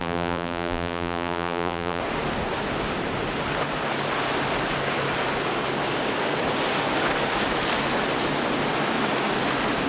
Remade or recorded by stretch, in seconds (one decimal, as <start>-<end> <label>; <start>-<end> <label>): 0.0-2.0 remade; 2.0-9.9 recorded